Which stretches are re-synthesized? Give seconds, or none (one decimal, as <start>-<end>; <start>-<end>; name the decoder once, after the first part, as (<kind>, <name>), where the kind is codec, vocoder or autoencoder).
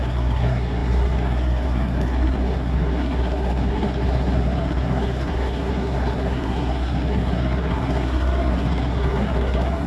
0.0-9.9 (codec, SNAC)